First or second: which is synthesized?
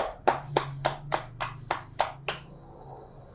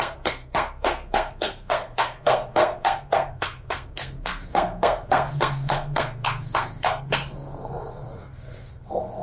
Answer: second